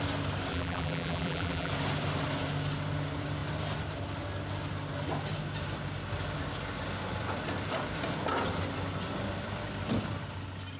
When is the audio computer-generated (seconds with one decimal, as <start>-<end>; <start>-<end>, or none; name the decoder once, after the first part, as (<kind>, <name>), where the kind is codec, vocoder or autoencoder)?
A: 0.5-1.7 (vocoder, BigVGAN v2)